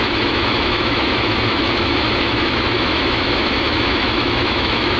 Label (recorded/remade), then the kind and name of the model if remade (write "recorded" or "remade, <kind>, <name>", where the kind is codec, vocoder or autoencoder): remade, autoencoder, DAC-VAE